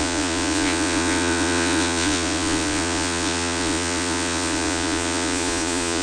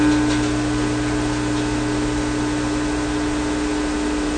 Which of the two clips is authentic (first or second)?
second